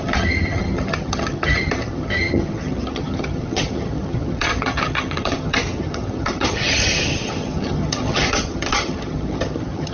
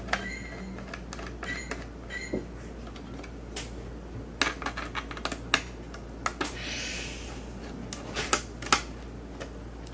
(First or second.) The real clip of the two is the second